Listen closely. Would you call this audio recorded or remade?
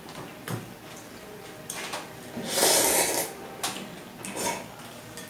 recorded